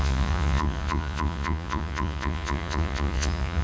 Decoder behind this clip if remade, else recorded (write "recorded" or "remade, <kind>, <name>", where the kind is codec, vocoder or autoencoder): remade, vocoder, Vocos